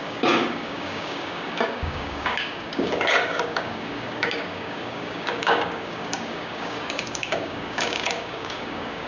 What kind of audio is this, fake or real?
fake